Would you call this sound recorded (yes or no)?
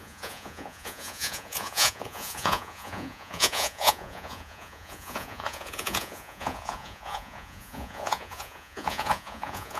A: no